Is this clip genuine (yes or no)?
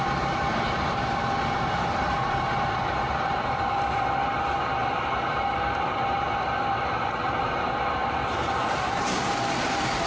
no